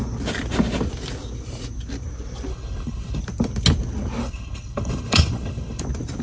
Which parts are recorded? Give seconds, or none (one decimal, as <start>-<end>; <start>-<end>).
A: 0.0-2.5; 3.2-4.2; 5.8-6.2